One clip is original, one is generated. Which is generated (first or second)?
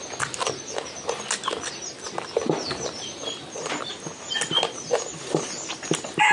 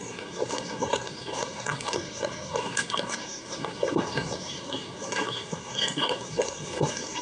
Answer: second